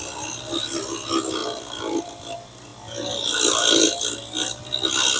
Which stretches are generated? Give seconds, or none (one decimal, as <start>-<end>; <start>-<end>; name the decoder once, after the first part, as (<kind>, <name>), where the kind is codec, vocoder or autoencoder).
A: 1.4-2.1 (vocoder, BigVGAN v2)